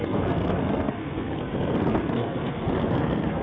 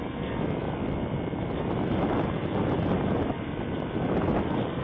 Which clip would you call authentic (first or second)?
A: second